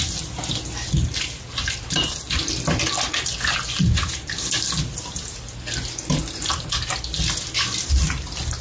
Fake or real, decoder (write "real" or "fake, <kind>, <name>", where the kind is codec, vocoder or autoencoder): real